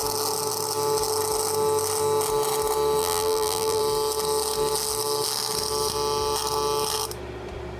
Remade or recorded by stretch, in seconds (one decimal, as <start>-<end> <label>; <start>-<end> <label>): 0.0-3.0 recorded; 3.0-3.8 remade; 3.8-7.8 recorded